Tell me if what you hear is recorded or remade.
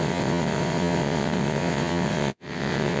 remade